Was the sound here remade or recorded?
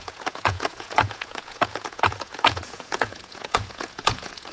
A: remade